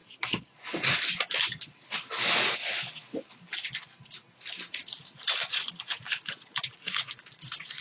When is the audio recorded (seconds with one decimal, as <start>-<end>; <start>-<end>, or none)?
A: 0.0-4.7

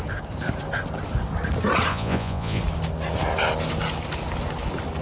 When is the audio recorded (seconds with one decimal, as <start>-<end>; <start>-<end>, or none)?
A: 0.0-1.9; 2.6-5.0

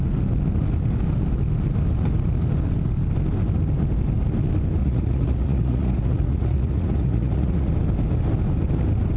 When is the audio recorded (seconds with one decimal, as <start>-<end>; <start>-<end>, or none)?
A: 0.0-4.8; 7.7-9.2

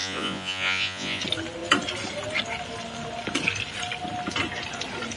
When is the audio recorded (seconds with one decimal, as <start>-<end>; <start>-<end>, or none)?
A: 1.2-5.2

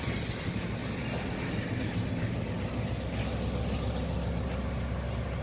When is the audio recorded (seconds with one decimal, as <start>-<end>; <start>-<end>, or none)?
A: 0.0-5.4

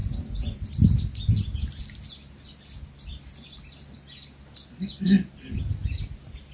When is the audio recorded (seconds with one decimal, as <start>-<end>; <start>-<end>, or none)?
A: 0.0-6.5